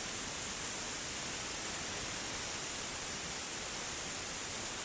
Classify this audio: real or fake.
real